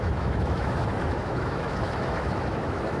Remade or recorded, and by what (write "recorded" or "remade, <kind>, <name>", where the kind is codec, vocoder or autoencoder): remade, autoencoder, DAC-VAE